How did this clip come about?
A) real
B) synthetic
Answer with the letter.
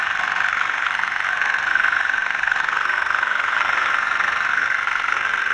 B